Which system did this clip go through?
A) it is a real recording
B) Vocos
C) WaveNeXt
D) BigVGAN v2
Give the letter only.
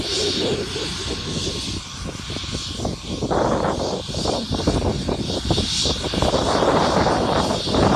A